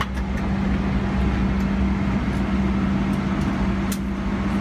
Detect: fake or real real